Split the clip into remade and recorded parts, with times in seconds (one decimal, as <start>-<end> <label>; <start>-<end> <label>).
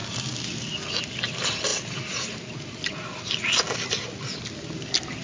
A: 0.0-5.2 recorded